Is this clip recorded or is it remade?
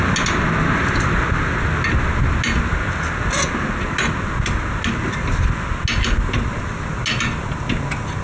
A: recorded